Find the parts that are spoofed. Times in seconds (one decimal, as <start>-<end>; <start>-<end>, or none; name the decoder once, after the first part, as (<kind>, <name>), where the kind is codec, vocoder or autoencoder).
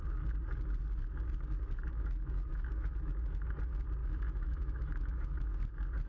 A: 1.9-3.6 (autoencoder, DAC-VAE); 4.0-5.6